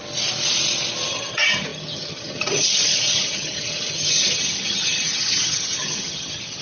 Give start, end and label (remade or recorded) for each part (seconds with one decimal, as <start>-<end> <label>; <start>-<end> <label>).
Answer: 0.0-1.1 recorded; 1.1-6.6 remade